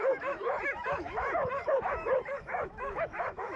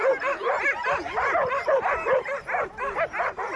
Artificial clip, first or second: first